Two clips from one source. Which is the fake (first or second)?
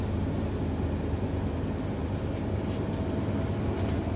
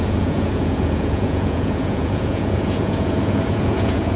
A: second